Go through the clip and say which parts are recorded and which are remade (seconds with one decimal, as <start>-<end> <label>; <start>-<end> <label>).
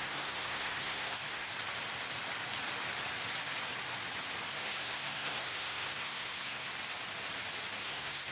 0.0-1.5 remade; 1.5-4.5 recorded; 4.5-6.7 remade; 6.7-7.8 recorded; 7.8-8.3 remade